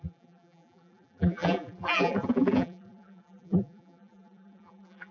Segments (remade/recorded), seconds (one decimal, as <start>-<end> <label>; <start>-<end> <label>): 0.0-5.1 remade